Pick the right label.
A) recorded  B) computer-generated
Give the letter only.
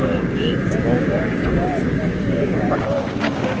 B